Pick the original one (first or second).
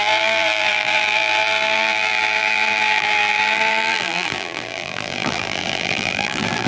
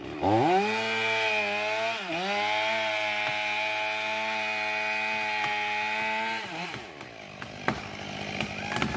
second